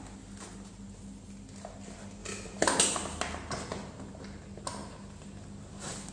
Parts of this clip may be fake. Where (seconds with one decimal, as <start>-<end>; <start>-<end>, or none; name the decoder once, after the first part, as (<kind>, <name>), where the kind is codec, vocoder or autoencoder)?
none